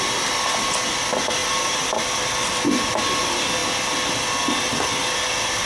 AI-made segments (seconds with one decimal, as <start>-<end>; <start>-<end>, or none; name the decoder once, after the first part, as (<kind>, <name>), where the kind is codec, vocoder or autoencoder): none